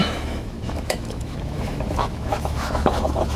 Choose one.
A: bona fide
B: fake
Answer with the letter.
B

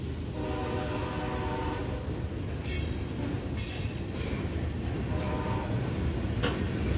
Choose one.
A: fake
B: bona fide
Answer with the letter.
B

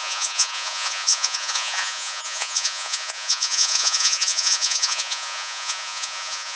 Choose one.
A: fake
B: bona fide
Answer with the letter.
A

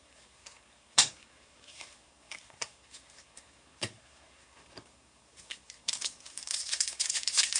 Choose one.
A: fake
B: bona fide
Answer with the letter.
A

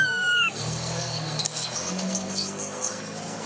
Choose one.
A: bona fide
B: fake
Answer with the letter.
B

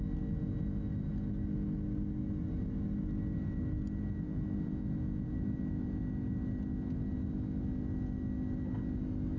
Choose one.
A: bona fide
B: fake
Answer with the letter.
A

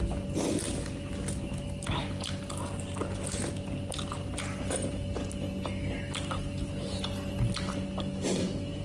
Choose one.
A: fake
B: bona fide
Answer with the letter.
B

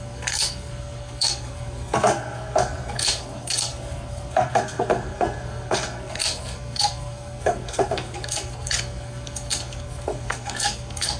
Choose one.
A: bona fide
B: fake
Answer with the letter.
B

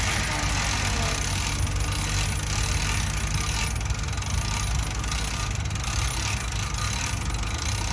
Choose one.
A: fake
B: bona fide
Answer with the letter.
B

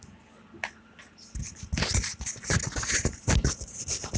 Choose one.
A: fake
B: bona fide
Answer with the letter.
B